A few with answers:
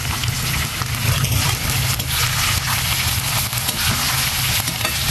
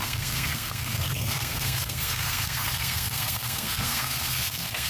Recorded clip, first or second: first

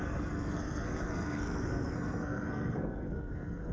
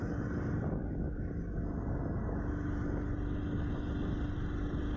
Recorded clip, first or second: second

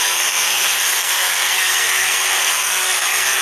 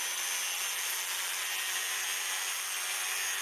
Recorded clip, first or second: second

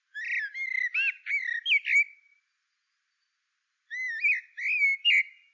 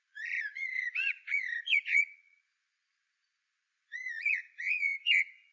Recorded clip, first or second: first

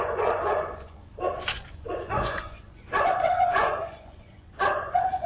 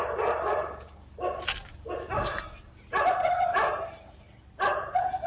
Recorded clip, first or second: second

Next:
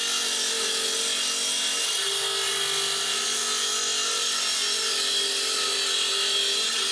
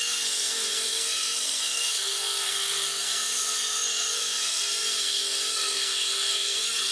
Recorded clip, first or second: first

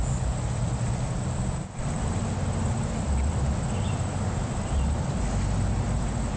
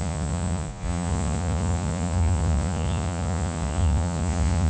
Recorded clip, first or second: first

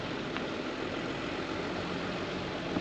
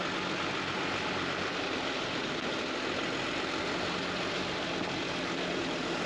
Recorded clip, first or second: second